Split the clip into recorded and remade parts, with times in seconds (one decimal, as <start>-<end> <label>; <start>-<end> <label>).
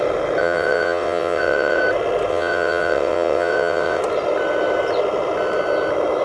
0.0-0.4 recorded; 0.4-1.8 remade; 1.8-2.3 recorded; 2.3-4.0 remade; 4.0-6.2 recorded